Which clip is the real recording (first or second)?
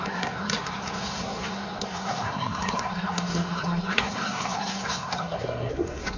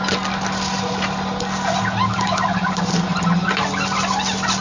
second